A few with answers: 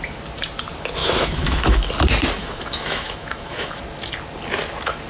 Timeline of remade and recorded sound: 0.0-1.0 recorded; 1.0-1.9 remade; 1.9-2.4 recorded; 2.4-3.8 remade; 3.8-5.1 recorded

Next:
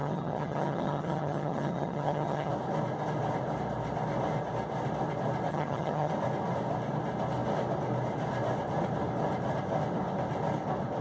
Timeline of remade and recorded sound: 0.0-2.5 remade; 2.5-5.5 recorded; 5.5-6.1 remade; 6.1-11.0 recorded

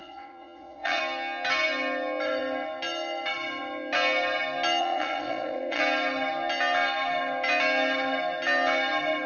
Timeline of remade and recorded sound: 0.0-1.0 remade; 1.0-4.8 recorded; 4.8-5.8 remade; 5.8-9.3 recorded

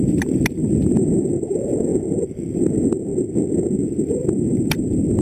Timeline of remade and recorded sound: 0.0-1.9 remade; 1.9-2.5 recorded; 2.5-3.1 remade; 3.1-3.9 recorded; 3.9-5.2 remade